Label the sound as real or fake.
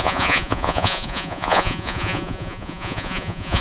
fake